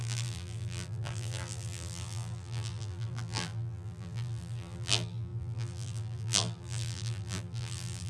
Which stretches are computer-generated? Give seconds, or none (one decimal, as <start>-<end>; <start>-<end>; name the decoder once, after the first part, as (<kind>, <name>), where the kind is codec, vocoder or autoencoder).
0.0-8.1 (vocoder, BigVGAN v2)